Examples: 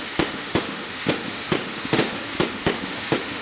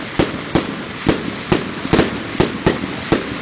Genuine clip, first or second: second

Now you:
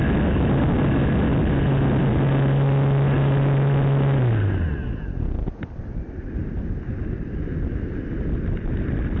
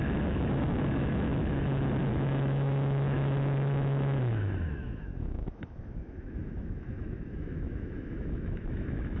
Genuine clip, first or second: first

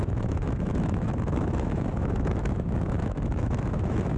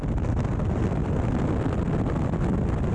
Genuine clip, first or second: second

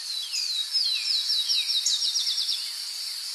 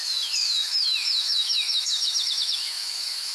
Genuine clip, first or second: first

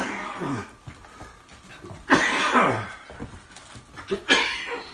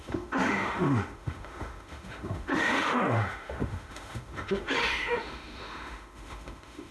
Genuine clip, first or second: first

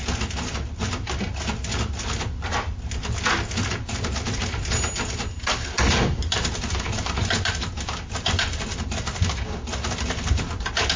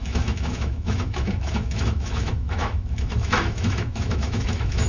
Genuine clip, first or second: first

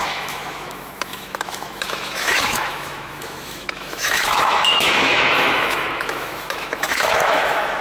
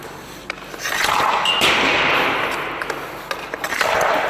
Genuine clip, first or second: second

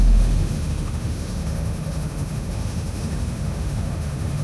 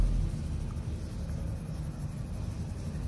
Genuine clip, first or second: second